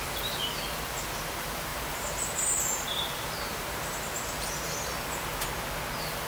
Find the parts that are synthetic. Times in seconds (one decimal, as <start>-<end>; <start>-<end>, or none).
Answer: 1.7-5.5

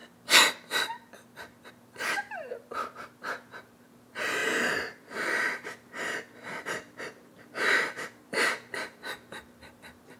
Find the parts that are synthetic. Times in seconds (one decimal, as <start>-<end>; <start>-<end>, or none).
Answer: 1.7-10.2

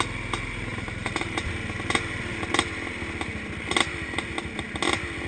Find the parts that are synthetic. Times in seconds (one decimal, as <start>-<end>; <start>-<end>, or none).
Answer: 0.7-1.4